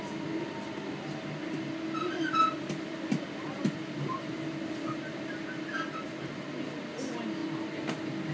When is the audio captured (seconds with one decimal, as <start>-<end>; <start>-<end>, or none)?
0.0-8.3